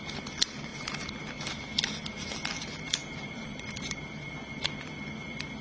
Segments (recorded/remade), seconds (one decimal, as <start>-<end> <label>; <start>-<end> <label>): 0.0-3.0 recorded; 3.0-4.0 remade; 4.0-5.6 recorded